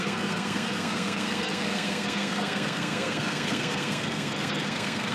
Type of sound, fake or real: fake